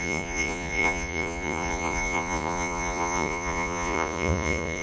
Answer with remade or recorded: remade